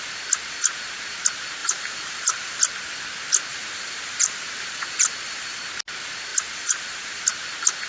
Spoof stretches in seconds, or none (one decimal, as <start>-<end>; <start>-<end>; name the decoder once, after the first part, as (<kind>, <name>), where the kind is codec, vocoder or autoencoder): 1.6-2.6 (vocoder, BigVGAN v2); 3.5-5.6; 6.3-7.2